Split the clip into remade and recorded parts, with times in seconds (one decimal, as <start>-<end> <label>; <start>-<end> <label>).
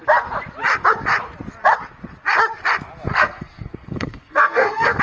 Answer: 0.0-3.1 recorded; 3.1-5.0 remade